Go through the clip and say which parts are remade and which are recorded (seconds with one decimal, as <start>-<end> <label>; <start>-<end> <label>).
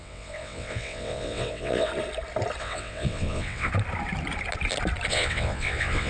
0.0-1.9 remade; 1.9-2.6 recorded; 2.6-3.7 remade; 3.7-5.1 recorded; 5.1-6.1 remade